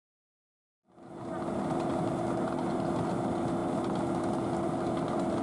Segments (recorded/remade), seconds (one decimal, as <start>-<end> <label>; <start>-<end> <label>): 0.0-5.4 recorded